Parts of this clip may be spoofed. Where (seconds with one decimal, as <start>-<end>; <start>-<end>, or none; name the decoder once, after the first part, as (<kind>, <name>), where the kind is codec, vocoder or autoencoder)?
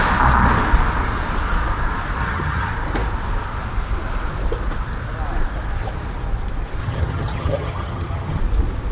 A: 2.2-2.7 (vocoder, HiFi-GAN); 6.8-8.4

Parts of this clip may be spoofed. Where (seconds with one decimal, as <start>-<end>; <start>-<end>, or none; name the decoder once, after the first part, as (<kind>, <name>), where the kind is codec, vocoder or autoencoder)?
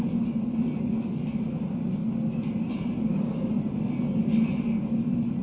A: 3.1-3.6 (codec, DAC)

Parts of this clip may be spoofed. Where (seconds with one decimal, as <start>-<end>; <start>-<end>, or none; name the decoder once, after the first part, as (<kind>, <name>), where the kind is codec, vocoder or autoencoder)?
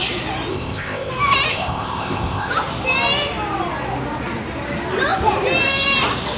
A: 0.5-1.1 (codec, ZipCodec); 1.5-2.5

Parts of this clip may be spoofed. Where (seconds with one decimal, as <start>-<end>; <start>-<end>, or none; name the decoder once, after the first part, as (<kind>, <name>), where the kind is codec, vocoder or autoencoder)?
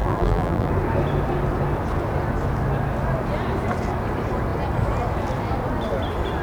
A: 0.0-0.7 (vocoder, BigVGAN v2)